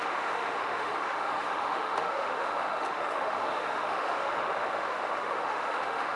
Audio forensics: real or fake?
fake